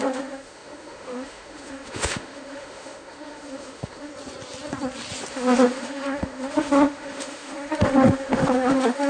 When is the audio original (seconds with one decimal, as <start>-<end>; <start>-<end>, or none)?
4.1-5.3